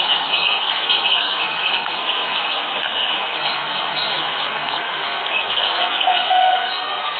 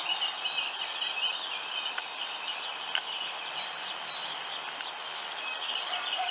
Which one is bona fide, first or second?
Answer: second